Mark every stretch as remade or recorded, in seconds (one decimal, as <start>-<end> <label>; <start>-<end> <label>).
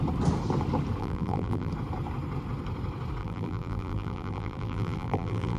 0.0-1.0 recorded; 1.0-1.7 remade; 1.7-3.2 recorded; 3.2-5.6 remade